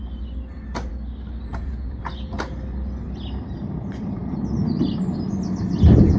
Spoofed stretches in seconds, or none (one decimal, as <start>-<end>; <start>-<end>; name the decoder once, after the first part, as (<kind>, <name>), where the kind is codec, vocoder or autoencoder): 1.5-2.0 (vocoder, Vocos)